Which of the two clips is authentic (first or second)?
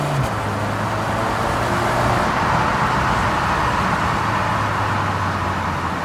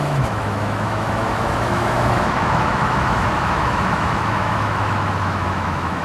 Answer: first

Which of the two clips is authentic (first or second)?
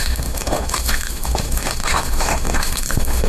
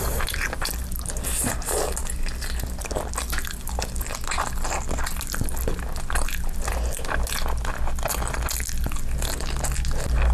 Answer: second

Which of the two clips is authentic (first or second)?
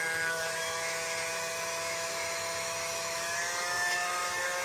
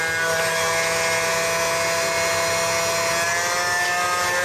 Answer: second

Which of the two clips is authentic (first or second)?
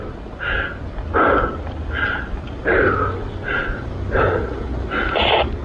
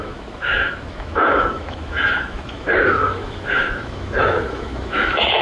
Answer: first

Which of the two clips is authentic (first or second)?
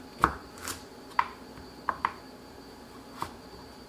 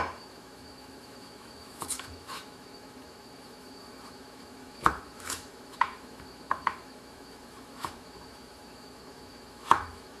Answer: first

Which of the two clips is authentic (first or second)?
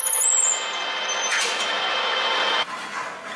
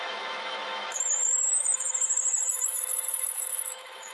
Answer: first